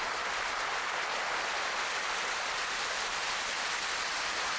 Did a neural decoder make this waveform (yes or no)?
no